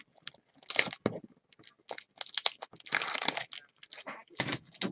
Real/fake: real